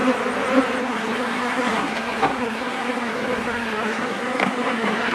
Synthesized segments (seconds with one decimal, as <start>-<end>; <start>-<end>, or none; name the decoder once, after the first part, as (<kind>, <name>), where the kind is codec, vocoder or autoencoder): 0.8-5.1 (codec, SNAC)